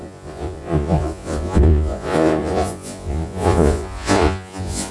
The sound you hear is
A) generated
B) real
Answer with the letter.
A